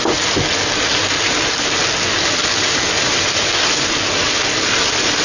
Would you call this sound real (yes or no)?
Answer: yes